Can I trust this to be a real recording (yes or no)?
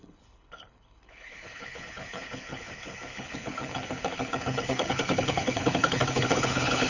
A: no